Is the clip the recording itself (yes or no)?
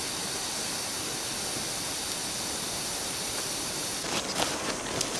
yes